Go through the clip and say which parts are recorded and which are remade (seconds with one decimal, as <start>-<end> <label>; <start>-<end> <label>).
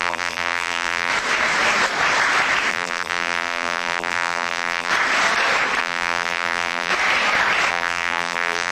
0.0-1.1 remade; 1.1-2.7 recorded; 2.7-4.9 remade; 4.9-5.8 recorded; 5.8-6.9 remade; 6.9-7.7 recorded; 7.7-8.7 remade